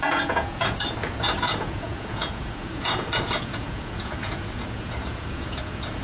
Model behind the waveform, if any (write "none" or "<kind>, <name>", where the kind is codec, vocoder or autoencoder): vocoder, Vocos